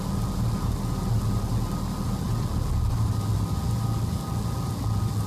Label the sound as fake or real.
real